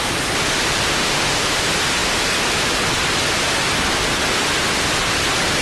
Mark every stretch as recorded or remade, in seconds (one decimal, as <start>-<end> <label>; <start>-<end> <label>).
0.0-0.9 recorded; 0.9-1.6 remade; 1.6-5.6 recorded